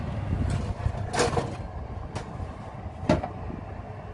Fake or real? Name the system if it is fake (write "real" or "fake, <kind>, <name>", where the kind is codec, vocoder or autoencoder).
real